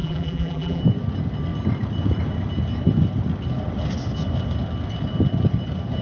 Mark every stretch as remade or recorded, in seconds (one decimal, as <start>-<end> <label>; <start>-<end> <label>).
0.0-0.8 remade; 0.8-6.0 recorded